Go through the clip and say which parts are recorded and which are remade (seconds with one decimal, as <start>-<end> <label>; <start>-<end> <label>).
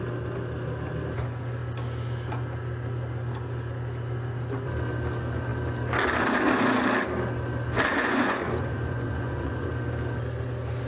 0.0-7.9 recorded; 7.9-9.7 remade; 9.7-10.9 recorded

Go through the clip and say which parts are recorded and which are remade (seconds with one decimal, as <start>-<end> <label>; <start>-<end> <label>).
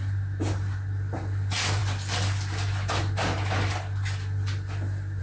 0.0-5.2 recorded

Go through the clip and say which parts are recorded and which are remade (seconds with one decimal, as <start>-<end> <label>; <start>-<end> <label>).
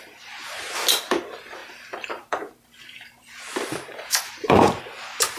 0.0-1.6 recorded; 1.6-4.8 remade; 4.8-5.4 recorded